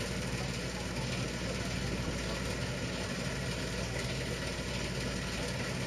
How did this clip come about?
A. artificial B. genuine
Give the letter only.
B